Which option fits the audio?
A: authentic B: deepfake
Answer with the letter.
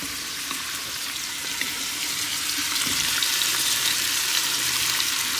B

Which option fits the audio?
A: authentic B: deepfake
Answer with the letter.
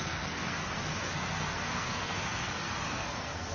B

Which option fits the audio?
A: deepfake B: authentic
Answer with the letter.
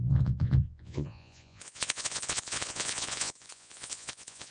A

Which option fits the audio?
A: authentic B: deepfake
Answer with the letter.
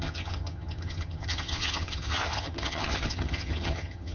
B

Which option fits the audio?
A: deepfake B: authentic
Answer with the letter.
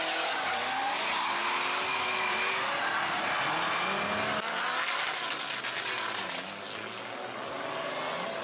B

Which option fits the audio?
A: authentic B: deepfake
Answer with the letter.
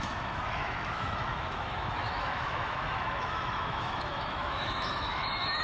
B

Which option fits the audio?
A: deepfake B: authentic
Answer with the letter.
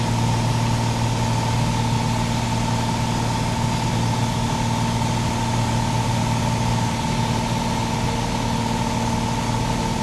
B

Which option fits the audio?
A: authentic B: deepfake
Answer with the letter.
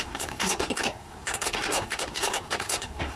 B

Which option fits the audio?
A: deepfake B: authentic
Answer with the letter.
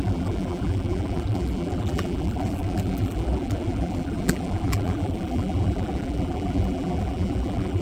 A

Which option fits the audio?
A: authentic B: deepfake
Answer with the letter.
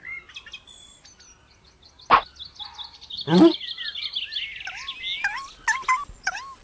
A